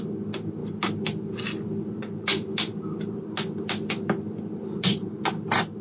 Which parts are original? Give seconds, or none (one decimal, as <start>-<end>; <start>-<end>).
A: 0.0-5.8